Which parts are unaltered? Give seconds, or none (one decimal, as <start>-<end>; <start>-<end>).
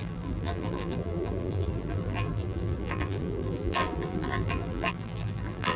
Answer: none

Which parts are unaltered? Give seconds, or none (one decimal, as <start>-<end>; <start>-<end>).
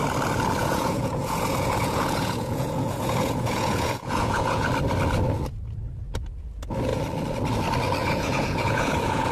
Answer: 0.0-0.6; 4.7-8.0